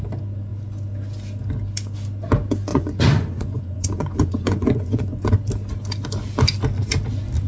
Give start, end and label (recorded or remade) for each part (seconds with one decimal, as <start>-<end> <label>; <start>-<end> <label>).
0.0-2.7 recorded; 2.7-5.3 remade; 5.3-7.5 recorded